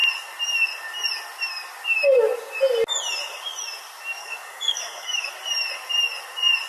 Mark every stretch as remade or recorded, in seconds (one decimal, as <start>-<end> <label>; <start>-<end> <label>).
0.0-4.2 recorded; 4.2-5.3 remade; 5.3-6.7 recorded